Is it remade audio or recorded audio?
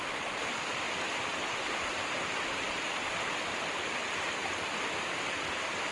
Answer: remade